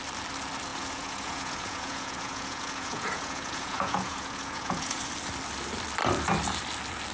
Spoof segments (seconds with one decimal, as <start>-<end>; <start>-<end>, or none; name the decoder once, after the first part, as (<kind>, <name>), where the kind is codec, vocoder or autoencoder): 0.7-5.0 (vocoder, Vocos)